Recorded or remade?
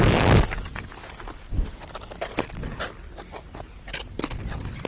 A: recorded